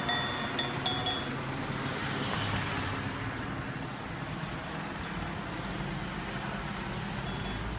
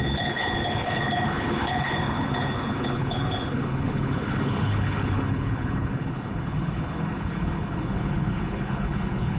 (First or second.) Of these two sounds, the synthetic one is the second